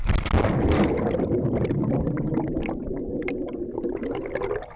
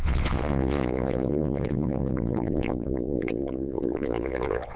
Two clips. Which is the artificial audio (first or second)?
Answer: second